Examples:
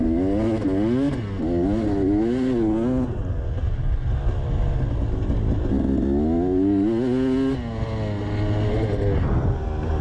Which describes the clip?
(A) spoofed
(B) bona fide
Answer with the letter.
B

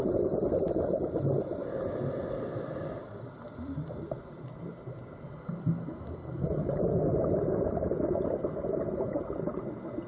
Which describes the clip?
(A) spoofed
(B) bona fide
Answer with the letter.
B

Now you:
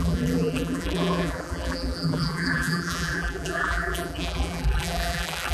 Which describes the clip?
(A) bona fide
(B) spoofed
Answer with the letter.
B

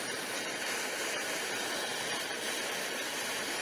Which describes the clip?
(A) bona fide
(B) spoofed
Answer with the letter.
B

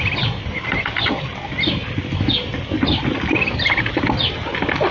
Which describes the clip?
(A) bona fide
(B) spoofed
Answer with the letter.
A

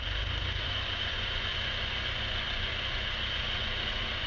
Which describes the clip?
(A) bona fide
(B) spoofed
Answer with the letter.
B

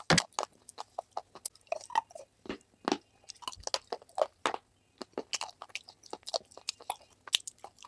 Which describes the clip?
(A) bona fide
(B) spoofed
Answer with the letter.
A